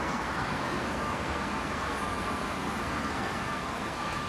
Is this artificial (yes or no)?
yes